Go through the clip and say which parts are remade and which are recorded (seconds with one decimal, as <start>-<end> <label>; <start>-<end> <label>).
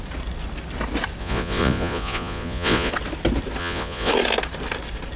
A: 0.0-1.2 recorded; 1.2-2.9 remade; 2.9-3.6 recorded; 3.6-4.1 remade; 4.1-5.2 recorded